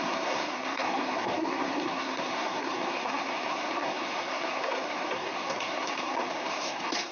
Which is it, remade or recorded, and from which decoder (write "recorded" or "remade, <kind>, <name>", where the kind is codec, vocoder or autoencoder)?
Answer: remade, codec, SNAC